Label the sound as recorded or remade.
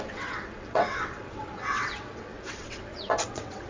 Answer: remade